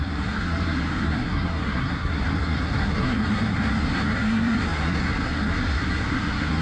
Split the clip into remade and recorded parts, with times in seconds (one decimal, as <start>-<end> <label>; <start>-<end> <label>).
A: 0.0-6.6 remade